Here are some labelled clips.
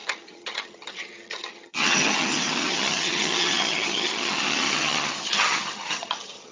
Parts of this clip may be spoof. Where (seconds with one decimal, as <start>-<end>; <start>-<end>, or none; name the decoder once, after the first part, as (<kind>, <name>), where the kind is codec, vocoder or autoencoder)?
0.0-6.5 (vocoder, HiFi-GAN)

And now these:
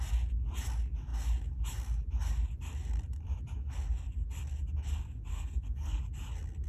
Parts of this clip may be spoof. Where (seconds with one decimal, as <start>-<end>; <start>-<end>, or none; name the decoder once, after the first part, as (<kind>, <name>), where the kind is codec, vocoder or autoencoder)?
5.3-6.0 (codec, SNAC)

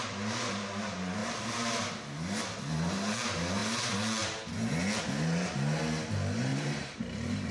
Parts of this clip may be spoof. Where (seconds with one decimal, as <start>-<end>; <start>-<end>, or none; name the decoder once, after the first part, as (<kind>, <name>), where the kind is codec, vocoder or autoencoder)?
1.2-1.9 (vocoder, BigVGAN v2); 6.5-7.5